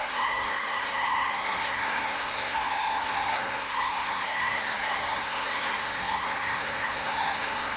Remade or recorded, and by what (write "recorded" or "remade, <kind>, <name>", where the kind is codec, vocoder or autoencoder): remade, codec, SNAC